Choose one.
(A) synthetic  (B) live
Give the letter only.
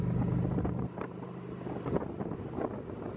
A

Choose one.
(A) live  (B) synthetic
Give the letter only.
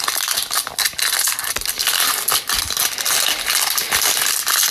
A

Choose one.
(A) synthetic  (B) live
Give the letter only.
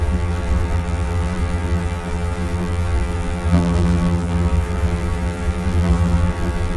A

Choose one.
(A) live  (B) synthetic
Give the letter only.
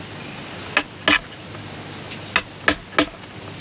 A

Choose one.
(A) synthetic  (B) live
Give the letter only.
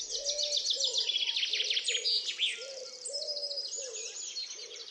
B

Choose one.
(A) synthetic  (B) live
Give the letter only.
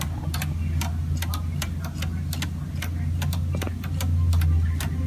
B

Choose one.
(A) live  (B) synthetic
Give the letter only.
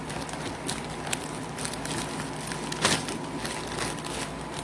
A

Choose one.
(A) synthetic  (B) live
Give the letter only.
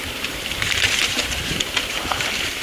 A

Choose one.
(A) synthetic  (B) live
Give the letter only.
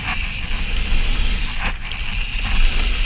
B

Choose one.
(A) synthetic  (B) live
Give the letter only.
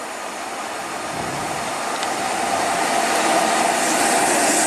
B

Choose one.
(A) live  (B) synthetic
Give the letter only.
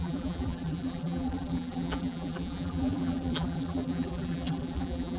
B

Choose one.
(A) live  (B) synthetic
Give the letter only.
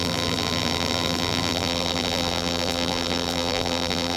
B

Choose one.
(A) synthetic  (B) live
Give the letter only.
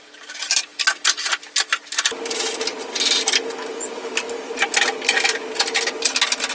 B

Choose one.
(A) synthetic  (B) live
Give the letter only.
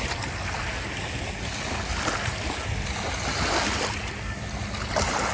B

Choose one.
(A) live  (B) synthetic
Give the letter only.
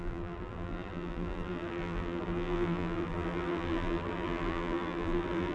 B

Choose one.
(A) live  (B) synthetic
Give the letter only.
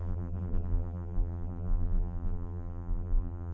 B